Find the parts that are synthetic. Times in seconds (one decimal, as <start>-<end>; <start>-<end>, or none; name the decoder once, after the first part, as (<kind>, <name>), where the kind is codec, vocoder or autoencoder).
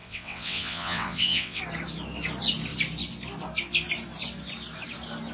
0.0-1.6 (vocoder, WaveNeXt)